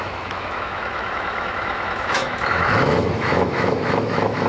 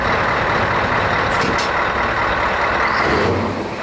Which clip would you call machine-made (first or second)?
first